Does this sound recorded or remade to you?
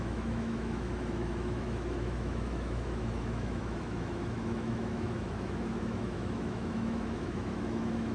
remade